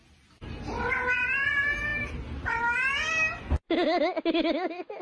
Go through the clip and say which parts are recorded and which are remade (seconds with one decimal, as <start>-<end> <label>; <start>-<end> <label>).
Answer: 0.0-5.0 recorded